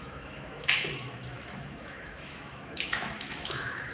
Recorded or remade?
remade